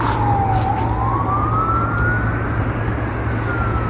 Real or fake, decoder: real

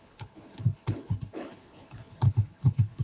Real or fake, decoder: fake, codec, HILCodec